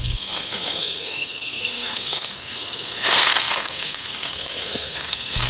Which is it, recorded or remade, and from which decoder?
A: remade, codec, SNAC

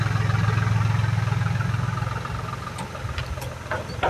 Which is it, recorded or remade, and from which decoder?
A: recorded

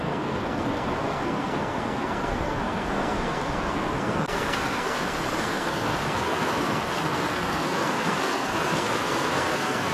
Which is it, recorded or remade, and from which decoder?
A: remade, codec, SNAC